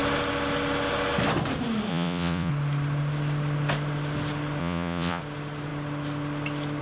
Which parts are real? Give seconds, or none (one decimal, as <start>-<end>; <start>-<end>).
0.0-1.9; 2.5-4.6; 5.2-6.8